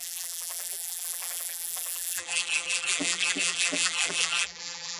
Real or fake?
fake